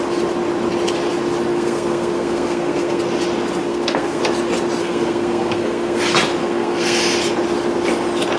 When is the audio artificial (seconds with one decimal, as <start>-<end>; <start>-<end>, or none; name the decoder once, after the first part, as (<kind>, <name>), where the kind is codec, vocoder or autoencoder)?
1.5-3.0 (codec, SNAC); 3.6-4.2; 4.8-6.0; 6.4-7.0